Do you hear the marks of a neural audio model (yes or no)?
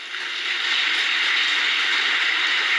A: no